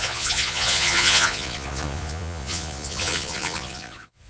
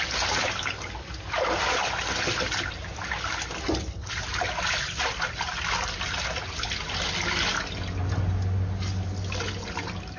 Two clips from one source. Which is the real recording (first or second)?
second